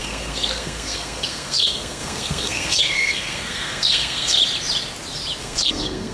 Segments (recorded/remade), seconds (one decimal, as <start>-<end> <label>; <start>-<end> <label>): 0.0-4.4 remade; 4.4-5.4 recorded; 5.4-6.1 remade